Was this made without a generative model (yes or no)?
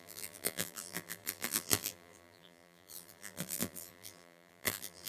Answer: no